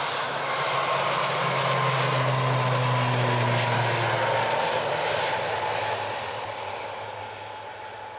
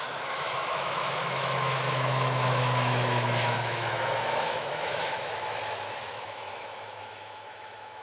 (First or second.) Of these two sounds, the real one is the first